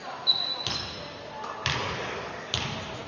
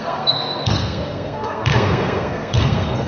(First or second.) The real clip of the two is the first